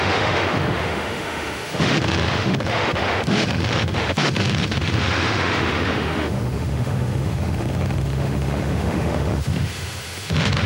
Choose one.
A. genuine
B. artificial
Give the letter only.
B